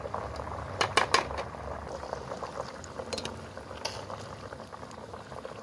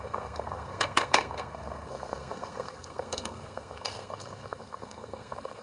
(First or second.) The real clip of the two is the first